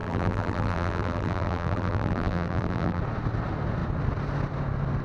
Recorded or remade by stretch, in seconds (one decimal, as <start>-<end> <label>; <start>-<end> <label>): 0.0-3.0 remade; 3.0-5.0 recorded